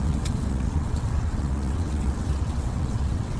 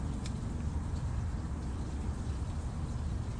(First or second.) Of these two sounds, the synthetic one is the first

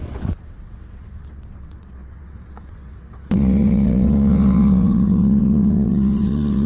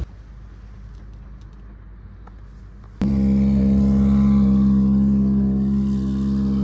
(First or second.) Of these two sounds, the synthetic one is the first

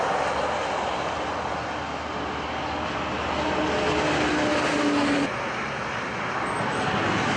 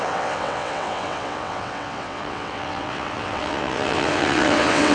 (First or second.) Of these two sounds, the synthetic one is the second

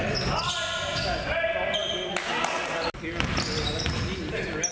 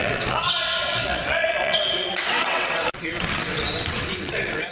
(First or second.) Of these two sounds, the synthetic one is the second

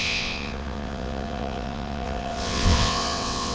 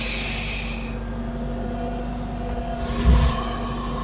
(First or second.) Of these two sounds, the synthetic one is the first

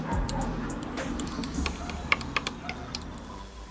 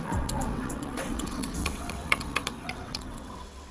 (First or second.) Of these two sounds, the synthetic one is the second